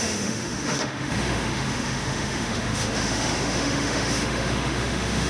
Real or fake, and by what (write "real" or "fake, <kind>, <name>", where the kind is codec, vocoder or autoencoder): fake, autoencoder, DAC-VAE